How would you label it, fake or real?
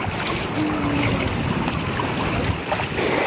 real